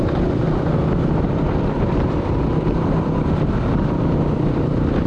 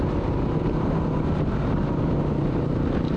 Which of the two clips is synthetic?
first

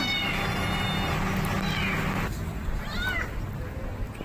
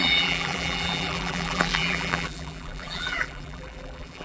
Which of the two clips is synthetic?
second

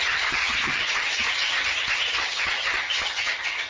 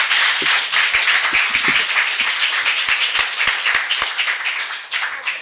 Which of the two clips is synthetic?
first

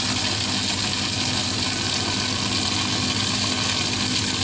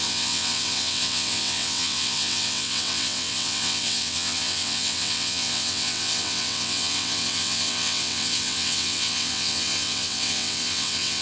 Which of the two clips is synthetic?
second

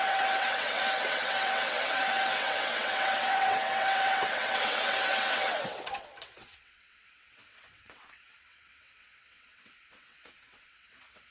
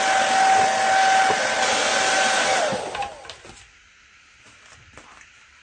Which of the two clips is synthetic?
first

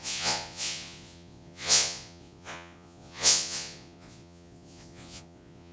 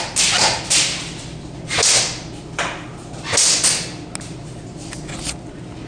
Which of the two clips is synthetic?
first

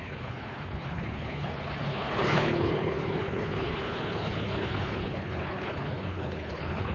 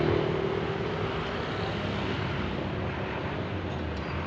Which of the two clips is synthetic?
first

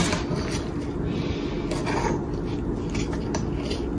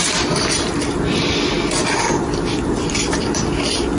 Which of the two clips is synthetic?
second